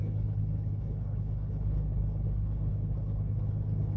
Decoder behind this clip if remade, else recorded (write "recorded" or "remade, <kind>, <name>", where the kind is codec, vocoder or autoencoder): remade, codec, HILCodec